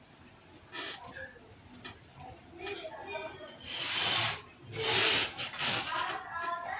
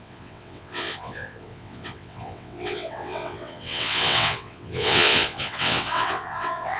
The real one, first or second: first